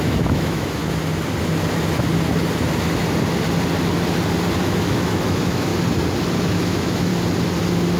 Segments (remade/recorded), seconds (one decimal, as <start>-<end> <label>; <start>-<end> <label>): 0.0-0.8 remade; 0.8-4.6 recorded; 4.6-5.7 remade; 5.7-6.5 recorded; 6.5-7.1 remade; 7.1-8.0 recorded